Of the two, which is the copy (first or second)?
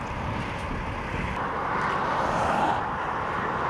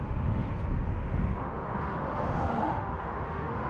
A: second